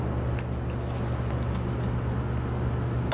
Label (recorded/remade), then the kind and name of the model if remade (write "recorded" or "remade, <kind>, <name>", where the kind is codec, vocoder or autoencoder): recorded